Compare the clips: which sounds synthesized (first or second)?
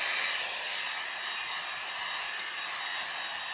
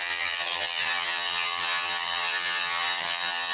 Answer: second